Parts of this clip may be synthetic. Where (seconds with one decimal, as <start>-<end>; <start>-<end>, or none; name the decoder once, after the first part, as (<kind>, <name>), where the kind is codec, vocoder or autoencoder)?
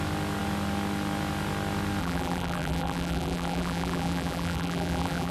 2.0-5.3 (vocoder, BigVGAN v2)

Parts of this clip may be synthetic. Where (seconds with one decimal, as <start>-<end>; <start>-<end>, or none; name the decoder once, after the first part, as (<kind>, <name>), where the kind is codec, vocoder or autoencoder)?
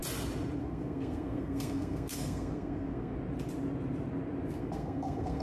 0.6-3.1 (codec, SNAC); 4.6-5.4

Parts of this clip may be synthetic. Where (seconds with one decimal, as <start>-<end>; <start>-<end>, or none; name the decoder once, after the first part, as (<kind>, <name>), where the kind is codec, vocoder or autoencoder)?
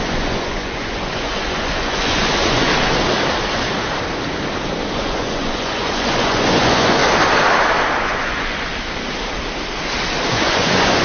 0.0-2.7 (vocoder, Vocos); 4.9-7.0; 8.0-8.7; 10.3-11.0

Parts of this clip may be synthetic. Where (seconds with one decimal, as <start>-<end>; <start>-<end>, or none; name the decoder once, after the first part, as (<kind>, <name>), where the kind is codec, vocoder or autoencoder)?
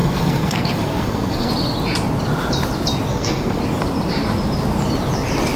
0.0-1.5 (codec, SNAC); 3.1-3.6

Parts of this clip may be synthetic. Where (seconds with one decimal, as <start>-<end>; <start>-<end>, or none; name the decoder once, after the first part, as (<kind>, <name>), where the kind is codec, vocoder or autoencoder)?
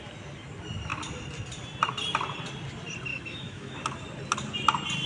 3.1-3.8 (autoencoder, DAC-VAE)